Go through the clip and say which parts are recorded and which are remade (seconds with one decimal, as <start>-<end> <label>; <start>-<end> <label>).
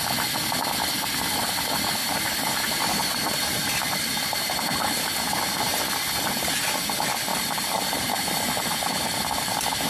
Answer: 0.0-2.0 recorded; 2.0-5.9 remade; 5.9-7.3 recorded; 7.3-8.8 remade; 8.8-9.9 recorded